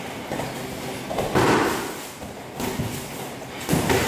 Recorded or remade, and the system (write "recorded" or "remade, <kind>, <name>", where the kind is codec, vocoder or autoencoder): recorded